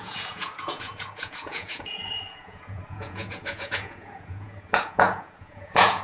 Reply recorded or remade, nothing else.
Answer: remade